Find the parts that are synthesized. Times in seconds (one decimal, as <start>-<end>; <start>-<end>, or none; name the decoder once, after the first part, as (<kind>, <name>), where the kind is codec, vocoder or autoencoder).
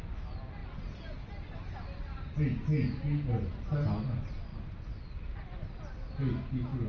none